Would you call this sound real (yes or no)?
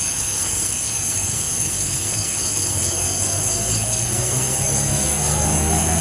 no